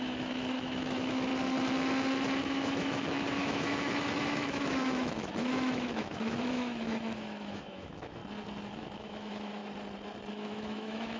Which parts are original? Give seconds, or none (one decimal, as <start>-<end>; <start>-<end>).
1.3-2.4; 8.2-8.7; 9.6-10.3